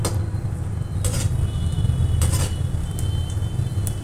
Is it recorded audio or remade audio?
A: recorded